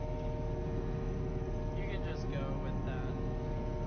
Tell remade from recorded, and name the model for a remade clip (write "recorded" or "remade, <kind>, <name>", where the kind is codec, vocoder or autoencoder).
recorded